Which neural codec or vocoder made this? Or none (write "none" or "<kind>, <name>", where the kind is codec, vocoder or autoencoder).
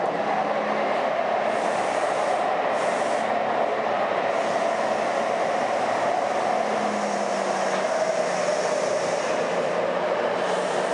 none